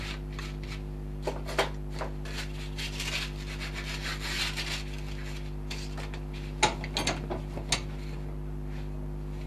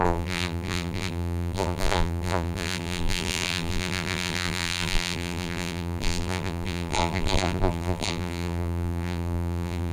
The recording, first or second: first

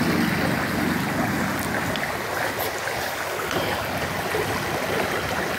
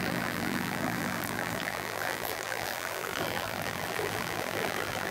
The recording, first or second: first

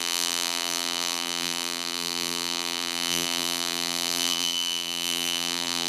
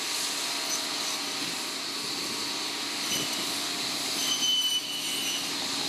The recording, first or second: second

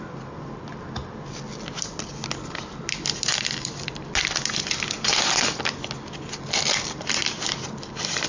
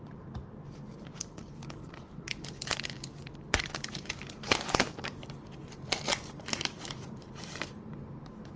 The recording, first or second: first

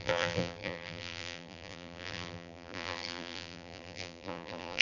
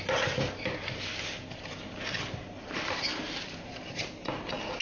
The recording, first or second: second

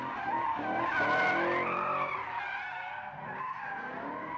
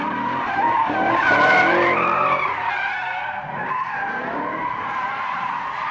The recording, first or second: first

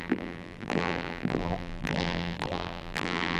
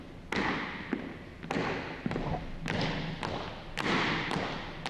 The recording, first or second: second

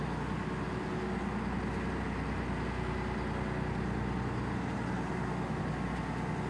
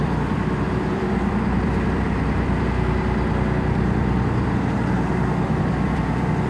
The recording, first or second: first